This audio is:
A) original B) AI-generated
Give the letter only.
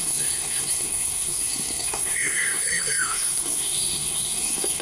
B